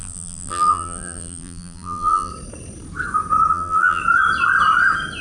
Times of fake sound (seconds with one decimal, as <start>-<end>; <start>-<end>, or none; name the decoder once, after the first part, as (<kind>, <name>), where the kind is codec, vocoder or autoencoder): 0.0-2.3 (vocoder, BigVGAN v2); 3.5-4.0